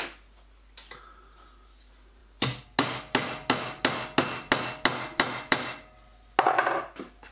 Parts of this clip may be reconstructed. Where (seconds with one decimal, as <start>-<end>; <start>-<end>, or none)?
none